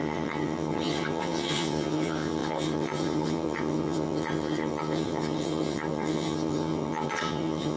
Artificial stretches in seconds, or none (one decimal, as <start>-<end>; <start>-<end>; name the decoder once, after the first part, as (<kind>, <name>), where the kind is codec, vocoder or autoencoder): 0.0-7.8 (vocoder, HiFi-GAN)